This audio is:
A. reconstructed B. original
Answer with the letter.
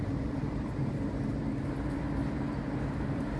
B